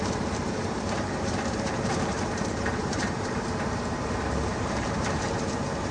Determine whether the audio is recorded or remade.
remade